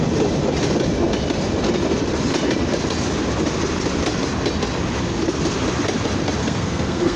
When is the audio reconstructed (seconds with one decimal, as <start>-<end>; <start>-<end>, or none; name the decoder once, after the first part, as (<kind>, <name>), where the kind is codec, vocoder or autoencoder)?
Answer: 6.4-7.2 (codec, SNAC)